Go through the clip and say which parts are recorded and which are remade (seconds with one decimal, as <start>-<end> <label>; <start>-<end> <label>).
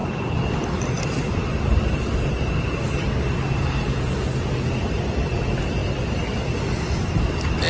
0.0-7.7 recorded